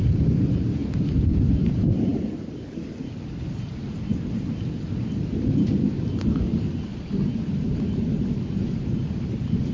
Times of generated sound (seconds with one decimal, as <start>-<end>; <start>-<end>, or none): 0.8-1.4; 2.1-2.8